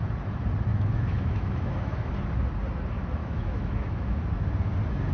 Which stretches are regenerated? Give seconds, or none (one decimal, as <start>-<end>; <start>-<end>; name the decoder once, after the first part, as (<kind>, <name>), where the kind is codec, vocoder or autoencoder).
0.7-2.1 (autoencoder, DAC-VAE); 3.2-4.2